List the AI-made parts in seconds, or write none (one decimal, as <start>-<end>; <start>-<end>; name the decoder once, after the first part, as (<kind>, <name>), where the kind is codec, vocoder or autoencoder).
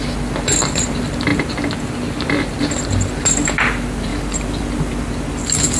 0.0-1.3 (vocoder, BigVGAN v2); 2.6-5.8